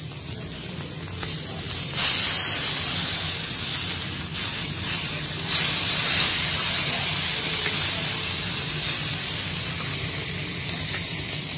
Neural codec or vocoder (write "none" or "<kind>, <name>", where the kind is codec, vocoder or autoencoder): none